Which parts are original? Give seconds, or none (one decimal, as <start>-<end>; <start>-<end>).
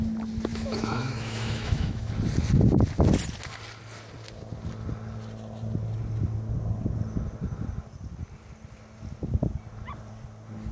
0.0-0.5; 2.1-10.7